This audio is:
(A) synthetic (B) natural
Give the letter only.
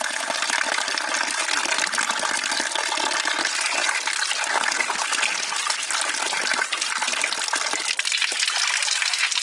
B